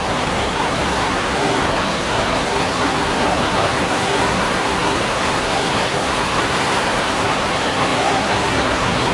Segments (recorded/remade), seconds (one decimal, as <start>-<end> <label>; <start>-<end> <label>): 0.0-9.1 remade